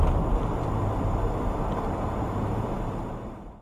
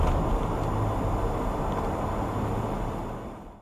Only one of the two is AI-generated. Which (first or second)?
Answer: first